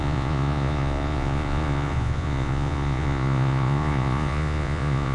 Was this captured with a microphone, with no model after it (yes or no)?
no